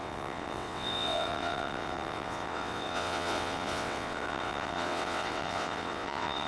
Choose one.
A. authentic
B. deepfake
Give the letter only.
B